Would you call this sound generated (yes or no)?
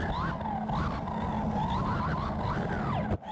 no